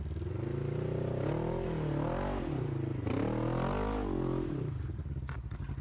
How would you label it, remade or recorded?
recorded